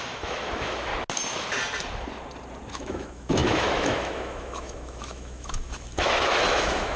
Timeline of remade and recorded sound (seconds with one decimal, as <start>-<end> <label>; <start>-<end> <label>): 0.0-0.9 remade; 0.9-2.7 recorded; 2.7-7.0 remade